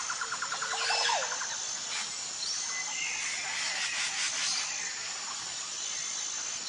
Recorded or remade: recorded